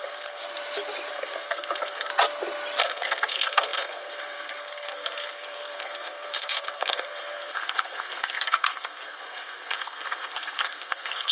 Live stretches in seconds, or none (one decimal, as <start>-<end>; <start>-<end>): 0.4-1.1; 2.1-2.8